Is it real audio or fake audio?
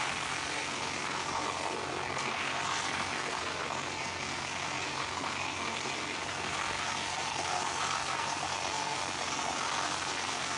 fake